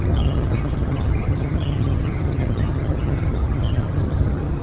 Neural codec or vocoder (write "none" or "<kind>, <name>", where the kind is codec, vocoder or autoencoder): vocoder, HiFi-GAN